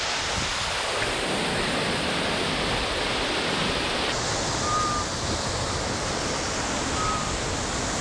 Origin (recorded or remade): recorded